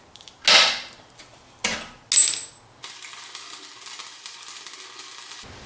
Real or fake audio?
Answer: real